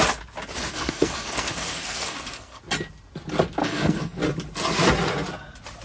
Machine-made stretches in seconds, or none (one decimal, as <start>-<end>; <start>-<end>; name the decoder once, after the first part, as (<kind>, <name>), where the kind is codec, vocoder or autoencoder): 0.7-2.6 (codec, SNAC); 3.6-4.2